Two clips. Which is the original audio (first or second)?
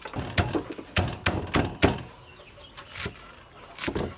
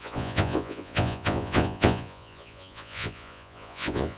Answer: first